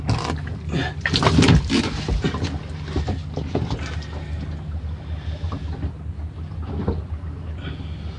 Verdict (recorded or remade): recorded